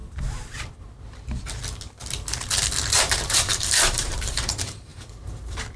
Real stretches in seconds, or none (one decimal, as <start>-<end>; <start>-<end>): 0.0-2.9